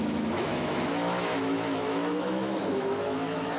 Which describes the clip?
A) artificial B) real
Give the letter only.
A